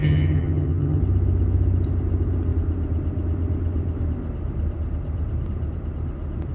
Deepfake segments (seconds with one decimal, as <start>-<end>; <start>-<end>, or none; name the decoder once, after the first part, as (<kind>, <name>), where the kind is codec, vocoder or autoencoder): 0.0-1.0 (vocoder, HiFi-GAN)